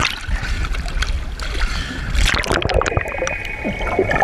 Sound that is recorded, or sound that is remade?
recorded